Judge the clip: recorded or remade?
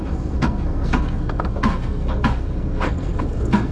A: remade